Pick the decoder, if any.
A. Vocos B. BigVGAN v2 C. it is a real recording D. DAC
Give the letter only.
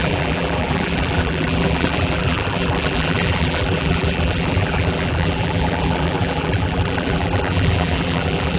B